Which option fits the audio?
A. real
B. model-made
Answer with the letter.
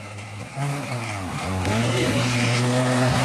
B